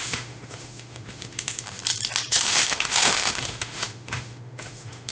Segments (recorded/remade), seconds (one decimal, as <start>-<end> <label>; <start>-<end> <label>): 0.0-1.8 remade; 1.8-2.3 recorded; 2.3-5.1 remade